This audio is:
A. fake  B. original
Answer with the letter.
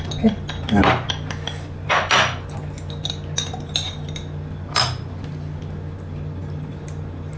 B